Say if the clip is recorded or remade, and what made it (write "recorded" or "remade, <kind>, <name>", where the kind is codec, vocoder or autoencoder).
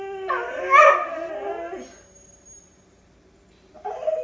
recorded